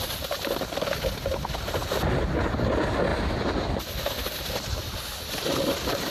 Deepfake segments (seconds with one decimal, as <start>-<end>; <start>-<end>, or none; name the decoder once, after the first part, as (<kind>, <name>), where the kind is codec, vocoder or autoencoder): none